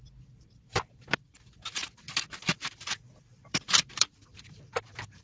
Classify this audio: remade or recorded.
remade